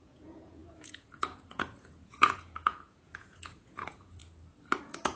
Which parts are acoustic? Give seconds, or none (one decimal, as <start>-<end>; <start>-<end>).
4.2-4.8